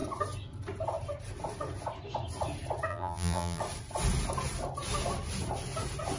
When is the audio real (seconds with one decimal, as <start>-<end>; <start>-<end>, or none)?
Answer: 0.0-2.9; 3.6-6.2